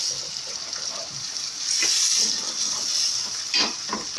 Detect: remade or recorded recorded